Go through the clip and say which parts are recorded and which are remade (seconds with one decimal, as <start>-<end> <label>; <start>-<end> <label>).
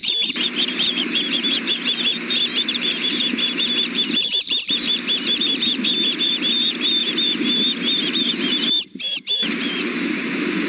0.0-7.0 remade; 7.0-8.0 recorded; 8.0-10.7 remade